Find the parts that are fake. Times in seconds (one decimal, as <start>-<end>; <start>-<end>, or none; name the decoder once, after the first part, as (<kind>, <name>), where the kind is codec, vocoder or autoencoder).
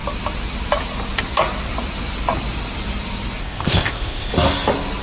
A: 3.4-4.3 (codec, ZipCodec)